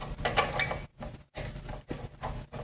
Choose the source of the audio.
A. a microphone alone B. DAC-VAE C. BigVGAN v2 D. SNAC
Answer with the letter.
A